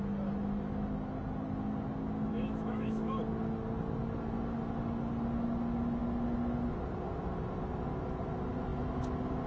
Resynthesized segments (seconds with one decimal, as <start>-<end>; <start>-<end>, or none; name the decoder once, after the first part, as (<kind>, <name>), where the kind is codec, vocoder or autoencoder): 2.3-3.2 (autoencoder, DAC-VAE)